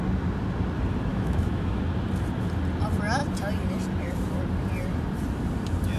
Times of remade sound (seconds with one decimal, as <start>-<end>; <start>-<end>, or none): 1.1-1.8